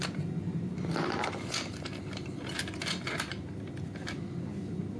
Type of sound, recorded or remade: recorded